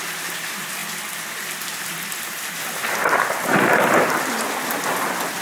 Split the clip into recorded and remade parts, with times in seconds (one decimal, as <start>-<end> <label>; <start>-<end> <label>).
0.0-5.4 recorded